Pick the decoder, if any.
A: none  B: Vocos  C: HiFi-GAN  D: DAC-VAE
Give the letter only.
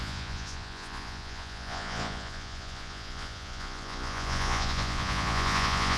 B